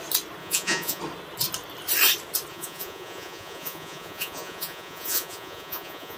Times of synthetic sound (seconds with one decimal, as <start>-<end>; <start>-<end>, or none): 0.4-1.0; 2.5-6.2